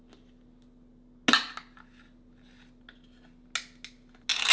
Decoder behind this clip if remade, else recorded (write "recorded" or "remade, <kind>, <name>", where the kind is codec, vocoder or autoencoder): recorded